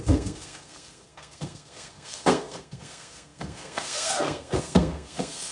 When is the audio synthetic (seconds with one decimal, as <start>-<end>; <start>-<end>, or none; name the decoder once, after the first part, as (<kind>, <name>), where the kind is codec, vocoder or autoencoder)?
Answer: 0.0-5.5 (codec, SNAC)